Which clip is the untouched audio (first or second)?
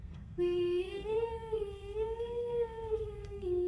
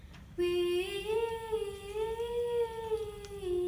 second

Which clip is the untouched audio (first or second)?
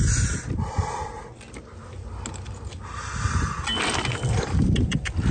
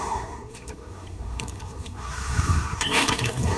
first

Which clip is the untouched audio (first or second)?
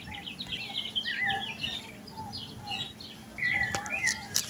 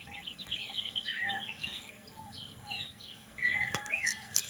first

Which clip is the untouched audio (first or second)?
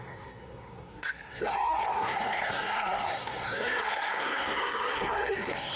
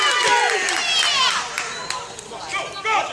second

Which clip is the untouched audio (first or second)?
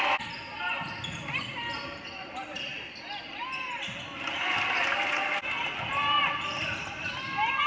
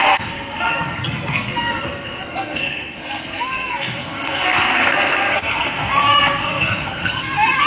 first